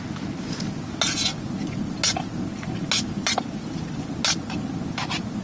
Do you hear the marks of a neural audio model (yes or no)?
no